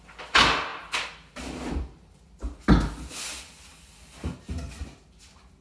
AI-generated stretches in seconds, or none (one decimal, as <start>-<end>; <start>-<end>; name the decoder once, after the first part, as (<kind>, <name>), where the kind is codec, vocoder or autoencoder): none